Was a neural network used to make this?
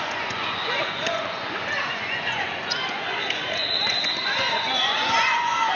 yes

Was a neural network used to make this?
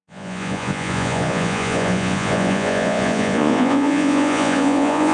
yes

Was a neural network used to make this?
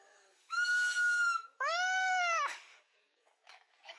yes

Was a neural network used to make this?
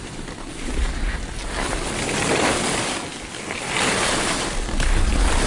no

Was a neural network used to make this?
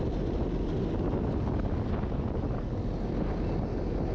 no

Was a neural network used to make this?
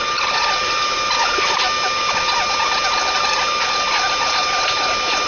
no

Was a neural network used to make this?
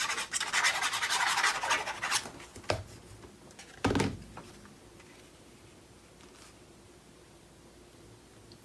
no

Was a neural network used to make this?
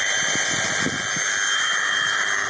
no